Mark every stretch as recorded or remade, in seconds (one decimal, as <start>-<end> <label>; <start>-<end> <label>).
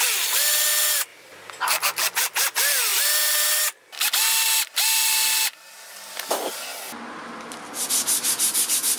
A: 0.0-1.1 recorded; 1.1-1.8 remade; 1.8-9.0 recorded